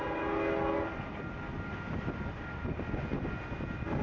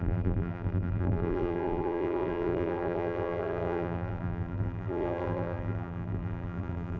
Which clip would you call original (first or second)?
first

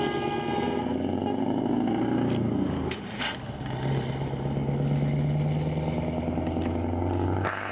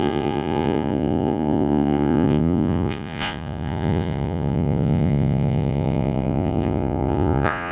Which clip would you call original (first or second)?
first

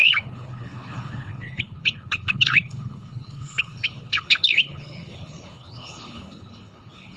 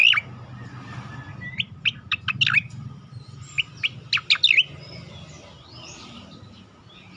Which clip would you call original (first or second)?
second